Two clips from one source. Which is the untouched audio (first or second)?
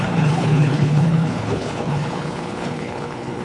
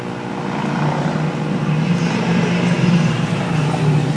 second